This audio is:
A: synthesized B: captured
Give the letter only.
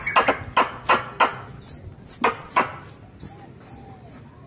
B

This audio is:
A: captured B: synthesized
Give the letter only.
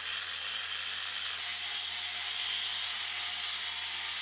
A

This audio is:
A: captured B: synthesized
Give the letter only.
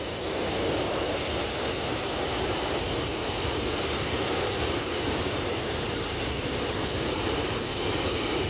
B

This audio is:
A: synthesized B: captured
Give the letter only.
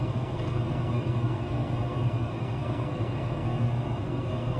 A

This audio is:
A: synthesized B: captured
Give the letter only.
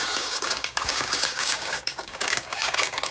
A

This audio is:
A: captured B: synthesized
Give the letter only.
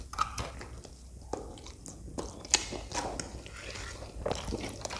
A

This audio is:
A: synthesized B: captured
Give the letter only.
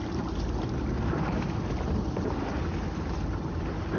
B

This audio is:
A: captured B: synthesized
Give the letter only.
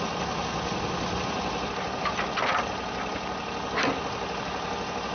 A